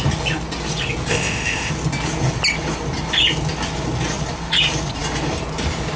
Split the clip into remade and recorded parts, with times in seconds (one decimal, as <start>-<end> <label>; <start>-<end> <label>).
0.0-1.1 recorded; 1.1-1.7 remade; 1.7-6.0 recorded